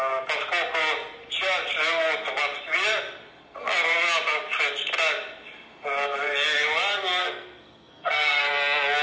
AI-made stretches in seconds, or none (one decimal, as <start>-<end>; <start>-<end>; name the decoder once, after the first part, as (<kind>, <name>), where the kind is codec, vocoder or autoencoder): 7.2-8.5 (codec, SNAC)